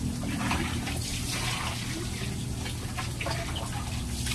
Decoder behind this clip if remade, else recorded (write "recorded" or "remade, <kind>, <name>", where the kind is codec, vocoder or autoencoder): recorded